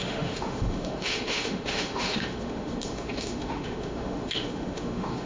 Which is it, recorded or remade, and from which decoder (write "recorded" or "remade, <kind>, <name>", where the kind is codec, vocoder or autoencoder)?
remade, autoencoder, DAC-VAE